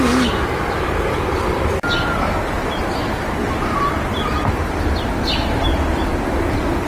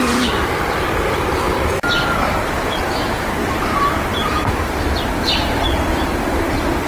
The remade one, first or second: second